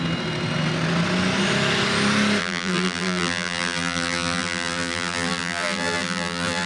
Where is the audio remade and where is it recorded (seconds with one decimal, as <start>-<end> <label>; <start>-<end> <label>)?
0.0-2.4 recorded; 2.4-6.7 remade